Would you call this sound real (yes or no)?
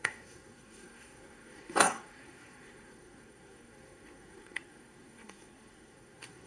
no